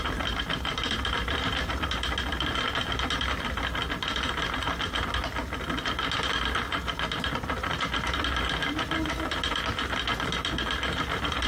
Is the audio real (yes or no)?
yes